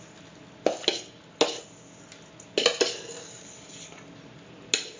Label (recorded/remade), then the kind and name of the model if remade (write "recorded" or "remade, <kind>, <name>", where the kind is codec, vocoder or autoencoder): recorded